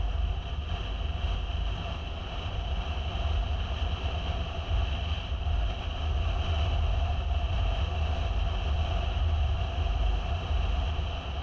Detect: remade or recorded recorded